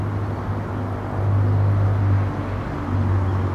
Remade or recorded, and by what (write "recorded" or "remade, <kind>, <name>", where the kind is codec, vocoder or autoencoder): recorded